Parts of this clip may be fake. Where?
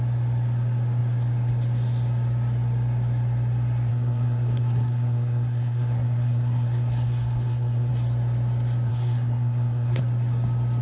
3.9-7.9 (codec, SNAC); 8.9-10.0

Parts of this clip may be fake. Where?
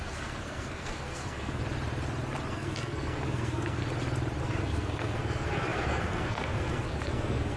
0.0-1.6 (codec, SNAC); 2.5-3.8; 4.4-7.6